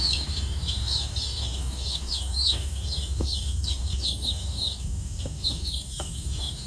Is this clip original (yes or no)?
no